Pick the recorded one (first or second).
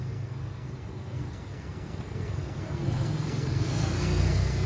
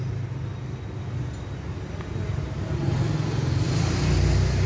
second